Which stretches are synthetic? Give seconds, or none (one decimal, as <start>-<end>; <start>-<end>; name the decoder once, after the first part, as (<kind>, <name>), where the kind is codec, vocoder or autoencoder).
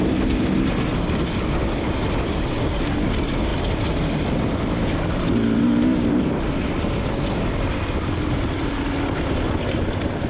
none